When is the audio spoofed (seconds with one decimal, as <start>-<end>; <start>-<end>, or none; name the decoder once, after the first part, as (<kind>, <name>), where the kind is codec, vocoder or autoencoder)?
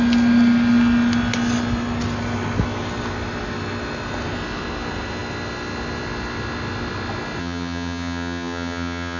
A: 7.4-9.2 (vocoder, HiFi-GAN)